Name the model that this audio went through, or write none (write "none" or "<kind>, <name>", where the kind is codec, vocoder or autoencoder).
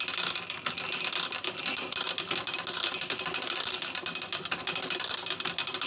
none